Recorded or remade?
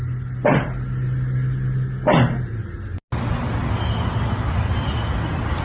recorded